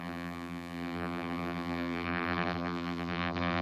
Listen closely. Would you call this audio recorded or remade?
remade